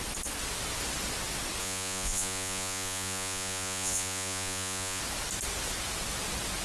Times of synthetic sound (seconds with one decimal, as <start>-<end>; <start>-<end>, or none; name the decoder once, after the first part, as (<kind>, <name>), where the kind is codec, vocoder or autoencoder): 1.6-5.0 (vocoder, Vocos)